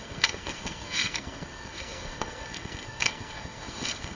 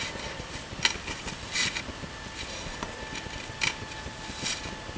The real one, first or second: second